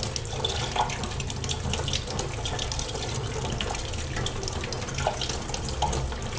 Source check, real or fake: real